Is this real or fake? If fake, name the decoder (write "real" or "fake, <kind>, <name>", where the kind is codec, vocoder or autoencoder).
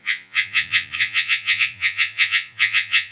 fake, vocoder, Vocos